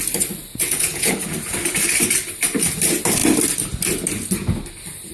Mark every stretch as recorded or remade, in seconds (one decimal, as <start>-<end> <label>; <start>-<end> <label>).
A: 0.0-0.5 recorded; 0.5-1.1 remade; 1.1-5.1 recorded